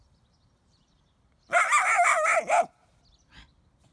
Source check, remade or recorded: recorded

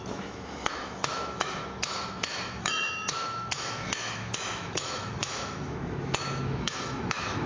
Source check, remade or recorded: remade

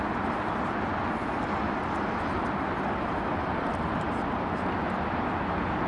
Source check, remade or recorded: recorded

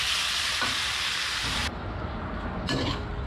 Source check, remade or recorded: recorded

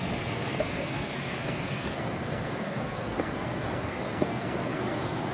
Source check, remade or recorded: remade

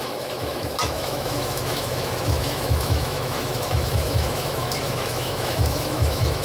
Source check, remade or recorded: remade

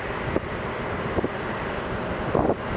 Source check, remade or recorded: recorded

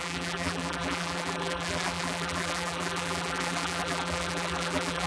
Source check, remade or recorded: remade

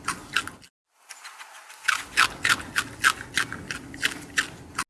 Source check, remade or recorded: recorded